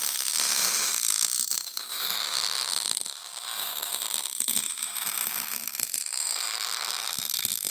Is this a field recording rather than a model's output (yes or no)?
no